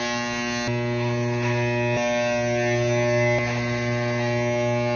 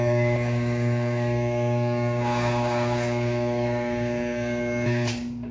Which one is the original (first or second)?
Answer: first